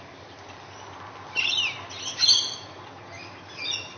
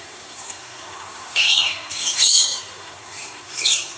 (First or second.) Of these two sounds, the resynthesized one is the second